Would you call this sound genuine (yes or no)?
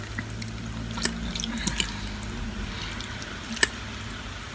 yes